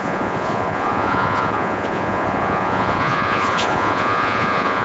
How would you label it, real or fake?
fake